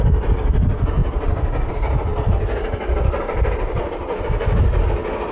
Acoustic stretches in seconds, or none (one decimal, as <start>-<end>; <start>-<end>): 0.0-5.3